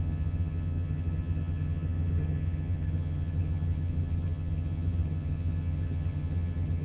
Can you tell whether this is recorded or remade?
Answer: remade